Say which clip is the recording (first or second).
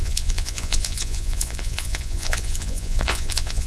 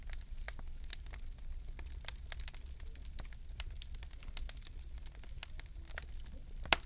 second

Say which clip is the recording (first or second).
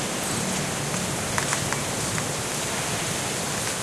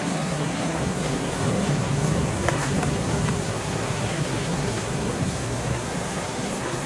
first